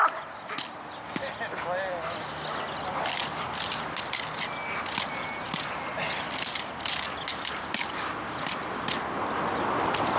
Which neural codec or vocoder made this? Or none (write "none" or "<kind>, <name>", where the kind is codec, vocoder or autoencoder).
none